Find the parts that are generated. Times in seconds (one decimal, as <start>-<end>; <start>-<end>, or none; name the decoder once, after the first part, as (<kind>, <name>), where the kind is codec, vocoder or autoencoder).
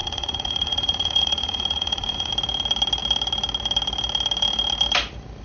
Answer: 0.0-2.3 (vocoder, Vocos)